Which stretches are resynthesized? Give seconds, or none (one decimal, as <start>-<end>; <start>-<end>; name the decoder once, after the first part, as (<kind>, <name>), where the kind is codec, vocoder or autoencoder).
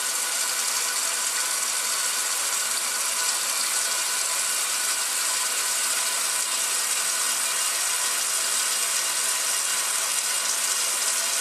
5.2-6.2 (vocoder, BigVGAN v2)